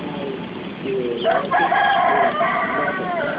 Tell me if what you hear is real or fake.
fake